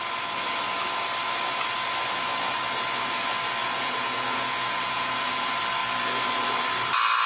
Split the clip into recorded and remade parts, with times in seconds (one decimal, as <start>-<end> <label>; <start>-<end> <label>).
0.0-3.6 recorded; 3.6-5.3 remade; 5.3-7.3 recorded